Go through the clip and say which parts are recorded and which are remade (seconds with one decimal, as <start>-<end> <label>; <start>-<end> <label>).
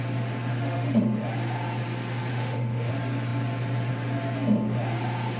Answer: 0.0-0.5 recorded; 0.5-1.0 remade; 1.0-2.3 recorded; 2.3-2.9 remade; 2.9-5.4 recorded